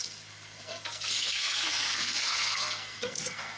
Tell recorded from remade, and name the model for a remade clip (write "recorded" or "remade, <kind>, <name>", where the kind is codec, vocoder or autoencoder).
remade, codec, SNAC